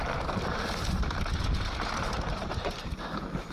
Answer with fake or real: fake